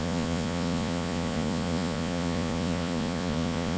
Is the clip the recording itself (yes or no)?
no